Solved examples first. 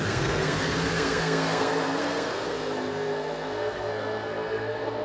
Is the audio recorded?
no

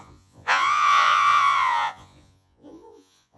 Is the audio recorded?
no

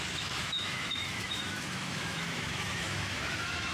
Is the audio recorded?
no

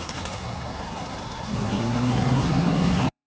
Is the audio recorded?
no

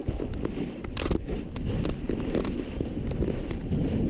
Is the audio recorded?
yes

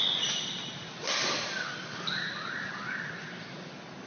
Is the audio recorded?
yes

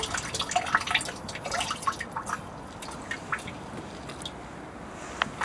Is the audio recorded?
yes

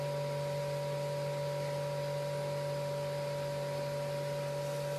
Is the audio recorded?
yes